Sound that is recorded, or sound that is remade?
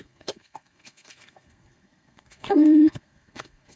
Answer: remade